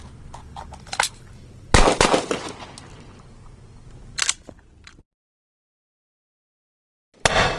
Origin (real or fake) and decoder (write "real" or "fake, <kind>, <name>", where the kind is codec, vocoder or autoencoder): real